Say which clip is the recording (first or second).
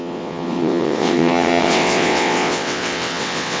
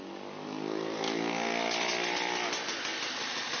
second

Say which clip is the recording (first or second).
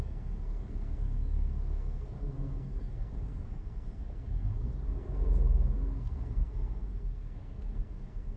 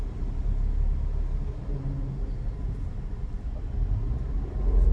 second